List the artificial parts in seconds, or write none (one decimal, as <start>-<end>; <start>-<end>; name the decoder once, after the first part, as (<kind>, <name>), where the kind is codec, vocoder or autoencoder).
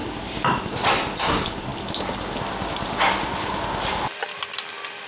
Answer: 0.0-0.6 (vocoder, BigVGAN v2)